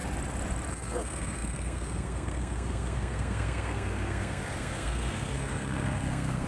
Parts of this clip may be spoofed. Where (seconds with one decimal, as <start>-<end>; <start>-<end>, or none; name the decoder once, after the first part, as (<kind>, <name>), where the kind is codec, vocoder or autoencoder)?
0.7-6.5 (codec, SNAC)